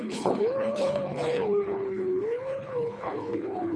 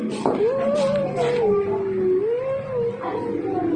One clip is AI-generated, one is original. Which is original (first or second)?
second